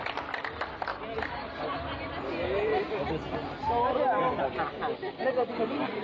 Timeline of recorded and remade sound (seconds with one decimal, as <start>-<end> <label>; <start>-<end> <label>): 0.0-6.0 recorded